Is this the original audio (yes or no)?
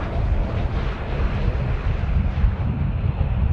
no